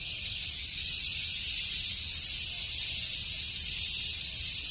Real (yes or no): yes